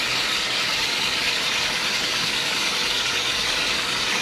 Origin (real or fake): fake